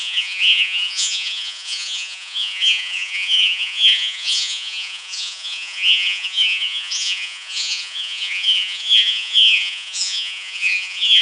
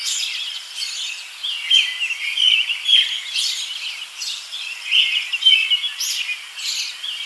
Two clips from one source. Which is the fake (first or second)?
first